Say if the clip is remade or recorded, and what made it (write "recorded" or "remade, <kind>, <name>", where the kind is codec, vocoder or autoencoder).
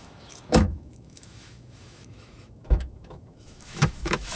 remade, autoencoder, DAC-VAE